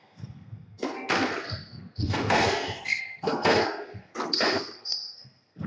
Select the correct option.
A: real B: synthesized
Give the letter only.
B